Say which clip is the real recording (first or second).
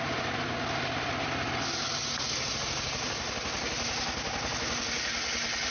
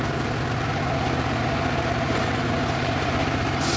first